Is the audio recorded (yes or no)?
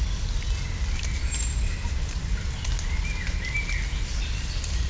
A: yes